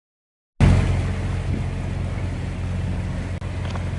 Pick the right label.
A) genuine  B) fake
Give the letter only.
A